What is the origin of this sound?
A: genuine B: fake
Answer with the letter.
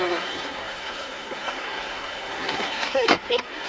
B